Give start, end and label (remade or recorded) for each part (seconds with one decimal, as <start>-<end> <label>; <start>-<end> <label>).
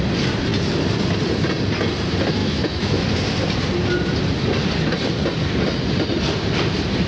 0.0-2.4 recorded; 2.4-3.0 remade; 3.0-7.1 recorded